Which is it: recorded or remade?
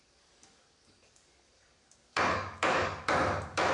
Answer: remade